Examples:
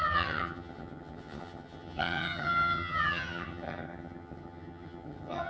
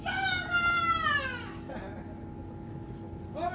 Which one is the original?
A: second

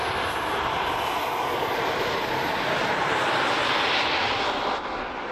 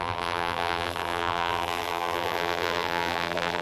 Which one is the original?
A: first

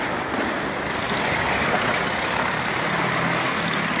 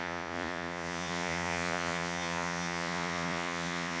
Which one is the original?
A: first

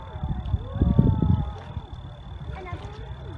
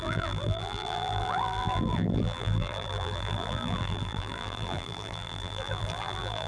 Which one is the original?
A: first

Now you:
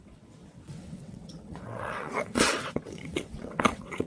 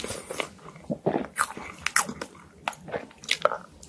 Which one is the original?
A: second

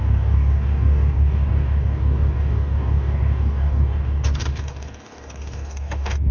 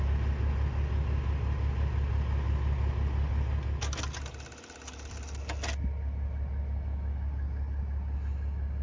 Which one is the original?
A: second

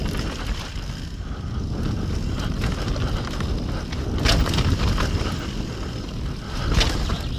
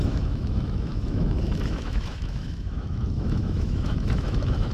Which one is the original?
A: first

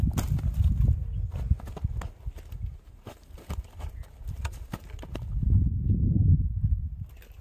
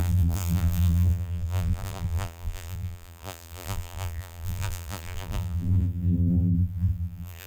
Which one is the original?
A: first